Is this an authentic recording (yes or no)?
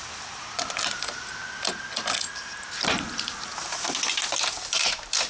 yes